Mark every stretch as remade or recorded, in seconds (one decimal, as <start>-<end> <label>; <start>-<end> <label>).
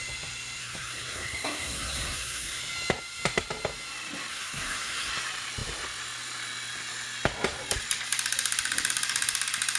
0.0-0.6 recorded; 0.6-2.6 remade; 2.6-4.3 recorded; 4.3-5.1 remade; 5.1-9.8 recorded